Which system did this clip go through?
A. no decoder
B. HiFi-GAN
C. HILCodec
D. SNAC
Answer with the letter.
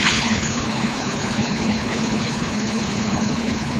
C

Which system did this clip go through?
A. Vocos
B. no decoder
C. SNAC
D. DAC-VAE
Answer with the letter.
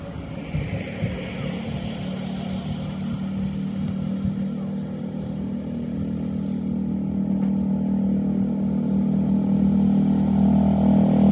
B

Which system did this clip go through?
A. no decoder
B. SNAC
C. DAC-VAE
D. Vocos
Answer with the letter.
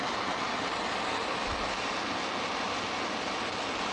A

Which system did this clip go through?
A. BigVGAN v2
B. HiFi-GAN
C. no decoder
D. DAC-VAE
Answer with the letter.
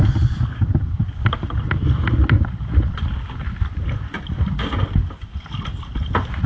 C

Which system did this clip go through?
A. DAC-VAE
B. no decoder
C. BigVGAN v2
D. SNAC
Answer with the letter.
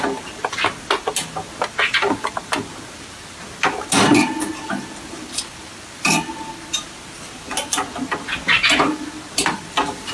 B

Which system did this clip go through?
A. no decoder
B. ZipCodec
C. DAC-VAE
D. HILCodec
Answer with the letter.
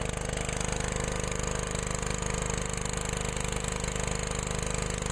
A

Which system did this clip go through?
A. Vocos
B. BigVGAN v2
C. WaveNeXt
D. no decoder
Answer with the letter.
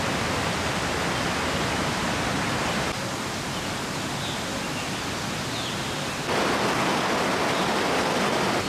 D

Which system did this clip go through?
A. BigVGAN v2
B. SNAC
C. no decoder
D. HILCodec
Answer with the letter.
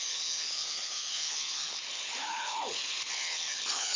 D